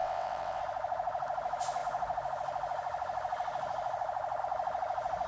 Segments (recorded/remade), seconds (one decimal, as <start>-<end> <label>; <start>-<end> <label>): 0.0-0.6 remade; 0.6-5.3 recorded

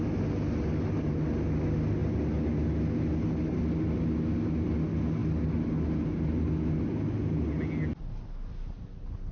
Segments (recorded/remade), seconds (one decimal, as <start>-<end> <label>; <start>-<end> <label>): 0.0-9.3 recorded

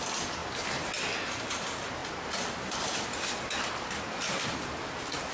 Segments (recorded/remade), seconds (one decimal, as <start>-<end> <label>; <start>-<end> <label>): 0.0-5.3 recorded

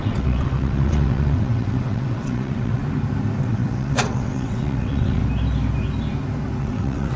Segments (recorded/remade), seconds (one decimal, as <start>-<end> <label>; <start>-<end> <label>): 0.0-2.8 remade; 2.8-3.4 recorded; 3.4-5.2 remade; 5.2-6.6 recorded; 6.6-7.2 remade

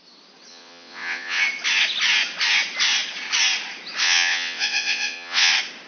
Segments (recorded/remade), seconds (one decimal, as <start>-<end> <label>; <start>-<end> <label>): 0.0-0.5 recorded; 0.5-1.4 remade; 1.4-4.0 recorded; 4.0-5.5 remade; 5.5-5.9 recorded

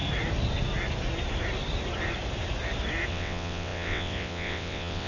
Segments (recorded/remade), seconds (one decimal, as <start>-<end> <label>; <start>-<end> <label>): 0.0-3.1 recorded; 3.1-5.1 remade